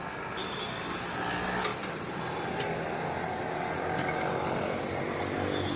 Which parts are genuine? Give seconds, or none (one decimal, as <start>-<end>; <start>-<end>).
0.0-5.8